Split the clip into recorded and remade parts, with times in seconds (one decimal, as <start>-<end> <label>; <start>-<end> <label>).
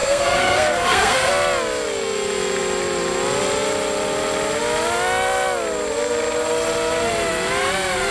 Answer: 0.0-1.3 remade; 1.3-8.1 recorded